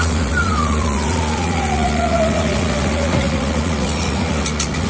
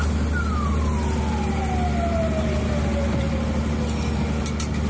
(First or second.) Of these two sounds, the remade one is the first